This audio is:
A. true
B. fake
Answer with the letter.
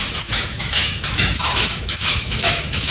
B